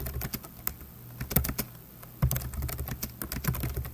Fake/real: real